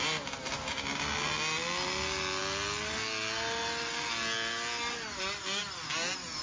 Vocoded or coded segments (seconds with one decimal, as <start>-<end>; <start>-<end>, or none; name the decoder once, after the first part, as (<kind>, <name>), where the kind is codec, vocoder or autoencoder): none